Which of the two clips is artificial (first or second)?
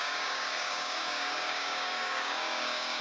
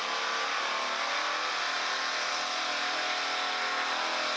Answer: first